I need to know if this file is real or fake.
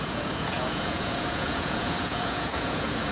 fake